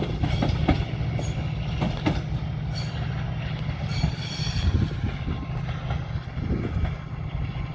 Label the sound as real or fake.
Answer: real